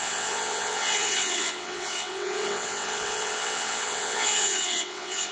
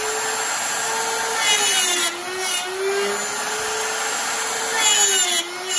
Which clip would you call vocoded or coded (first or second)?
first